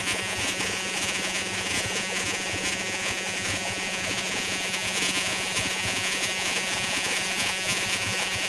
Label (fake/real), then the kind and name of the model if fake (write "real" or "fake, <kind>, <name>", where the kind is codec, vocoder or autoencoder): fake, vocoder, Vocos